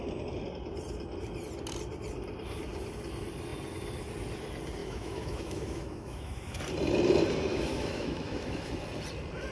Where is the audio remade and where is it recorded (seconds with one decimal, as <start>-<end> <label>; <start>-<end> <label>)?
0.0-4.8 recorded; 4.8-6.6 remade; 6.6-7.5 recorded; 7.5-8.7 remade; 8.7-9.5 recorded